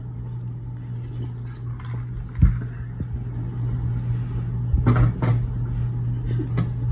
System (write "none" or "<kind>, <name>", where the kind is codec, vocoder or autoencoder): none